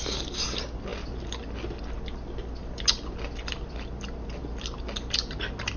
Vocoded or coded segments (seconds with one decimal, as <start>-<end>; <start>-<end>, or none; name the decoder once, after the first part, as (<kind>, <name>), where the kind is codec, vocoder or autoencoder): none